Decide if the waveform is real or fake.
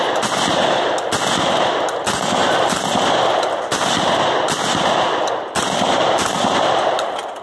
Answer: real